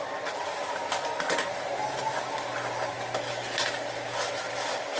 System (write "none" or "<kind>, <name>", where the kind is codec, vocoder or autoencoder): none